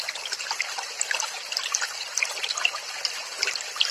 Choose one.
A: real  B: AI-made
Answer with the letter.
A